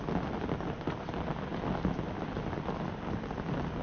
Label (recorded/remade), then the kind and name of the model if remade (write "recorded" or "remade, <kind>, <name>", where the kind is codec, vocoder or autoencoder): recorded